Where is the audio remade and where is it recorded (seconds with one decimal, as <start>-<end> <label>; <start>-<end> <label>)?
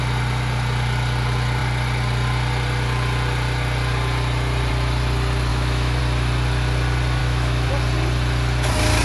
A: 0.0-5.5 recorded; 5.5-6.0 remade; 6.0-7.2 recorded; 7.2-7.7 remade; 7.7-9.0 recorded